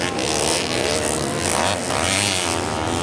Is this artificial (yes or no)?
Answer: no